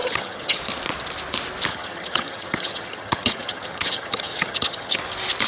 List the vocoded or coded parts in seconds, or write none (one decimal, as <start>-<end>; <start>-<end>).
0.0-0.6; 1.7-5.0